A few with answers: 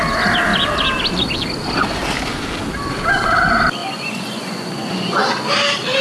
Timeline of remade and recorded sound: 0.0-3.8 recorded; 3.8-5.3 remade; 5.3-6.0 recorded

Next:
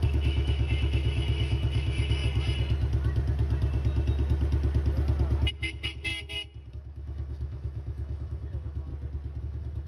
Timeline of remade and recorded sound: 0.0-2.2 remade; 2.2-5.5 recorded; 5.5-6.1 remade; 6.1-6.7 recorded; 6.7-8.9 remade; 8.9-9.4 recorded; 9.4-9.9 remade

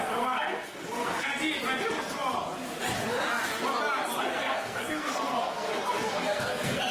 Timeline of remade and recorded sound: 0.0-1.3 remade; 1.3-4.2 recorded; 4.2-6.9 remade

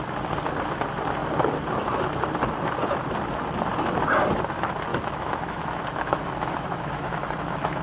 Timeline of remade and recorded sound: 0.0-4.9 recorded; 4.9-7.8 remade

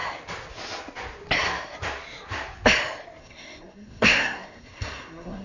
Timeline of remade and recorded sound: 0.0-3.2 recorded; 3.2-5.4 remade

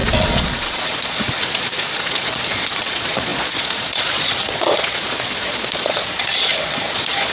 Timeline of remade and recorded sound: 0.0-7.3 remade

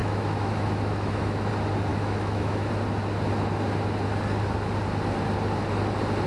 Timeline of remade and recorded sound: 0.0-1.5 remade; 1.5-1.9 recorded; 1.9-2.7 remade; 2.7-6.3 recorded